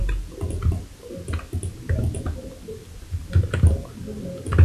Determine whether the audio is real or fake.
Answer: real